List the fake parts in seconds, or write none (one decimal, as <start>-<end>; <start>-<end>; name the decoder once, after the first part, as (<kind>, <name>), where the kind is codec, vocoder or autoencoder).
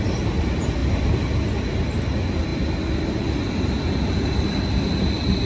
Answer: none